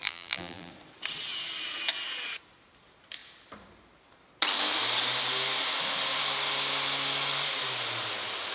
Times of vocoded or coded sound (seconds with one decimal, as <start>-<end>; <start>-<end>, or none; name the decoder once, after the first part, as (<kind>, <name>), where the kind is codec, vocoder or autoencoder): 0.0-0.7 (vocoder, BigVGAN v2)